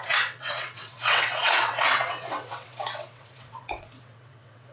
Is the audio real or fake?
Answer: fake